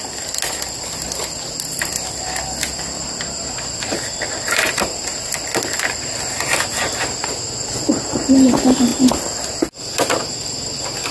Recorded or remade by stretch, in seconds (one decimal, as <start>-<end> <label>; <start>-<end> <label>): 0.0-11.1 recorded